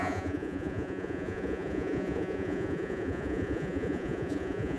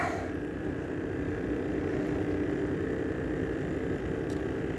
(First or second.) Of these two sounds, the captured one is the second